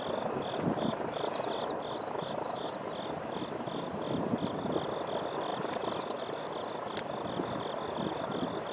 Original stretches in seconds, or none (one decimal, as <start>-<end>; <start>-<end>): 0.0-8.7